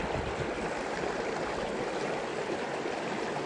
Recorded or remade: recorded